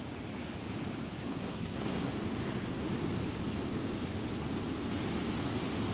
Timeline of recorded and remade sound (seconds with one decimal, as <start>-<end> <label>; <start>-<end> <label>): 0.0-1.3 recorded; 1.3-2.1 remade; 2.1-5.9 recorded